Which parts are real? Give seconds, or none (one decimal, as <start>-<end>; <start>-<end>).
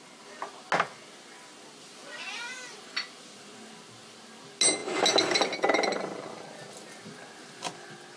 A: 0.0-8.2